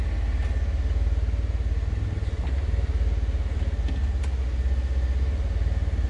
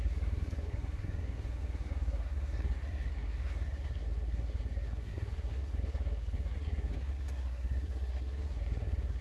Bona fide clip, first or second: first